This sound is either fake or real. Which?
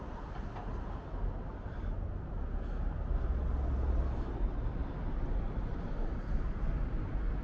real